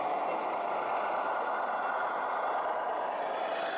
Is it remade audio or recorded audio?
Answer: recorded